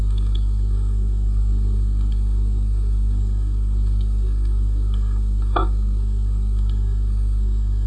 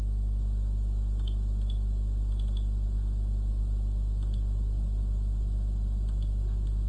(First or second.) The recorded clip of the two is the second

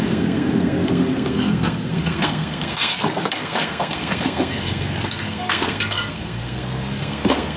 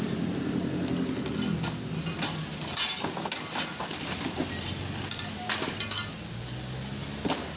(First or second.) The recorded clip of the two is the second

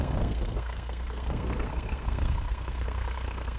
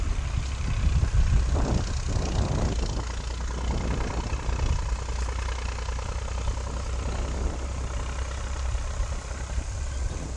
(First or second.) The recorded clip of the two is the second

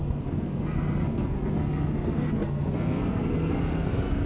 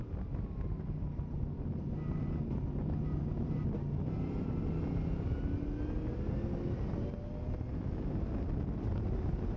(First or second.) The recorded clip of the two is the second